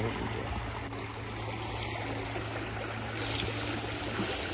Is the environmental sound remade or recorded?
recorded